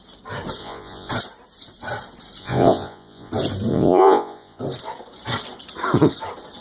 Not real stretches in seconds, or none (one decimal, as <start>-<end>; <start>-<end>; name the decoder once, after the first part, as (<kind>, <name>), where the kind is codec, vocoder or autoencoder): 0.6-1.1 (vocoder, Vocos); 2.4-3.3; 3.7-4.6